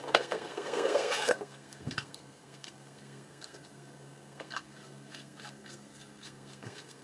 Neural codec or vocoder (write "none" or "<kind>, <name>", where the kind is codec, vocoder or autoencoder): codec, SNAC